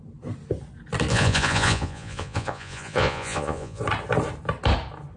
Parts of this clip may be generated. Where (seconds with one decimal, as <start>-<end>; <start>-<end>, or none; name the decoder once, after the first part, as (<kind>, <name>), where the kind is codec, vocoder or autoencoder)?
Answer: 1.1-3.8 (vocoder, Vocos)